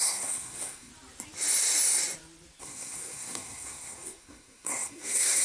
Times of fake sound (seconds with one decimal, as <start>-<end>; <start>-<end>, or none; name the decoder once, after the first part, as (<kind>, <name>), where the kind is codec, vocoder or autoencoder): 0.0-0.9 (codec, SNAC); 2.6-5.4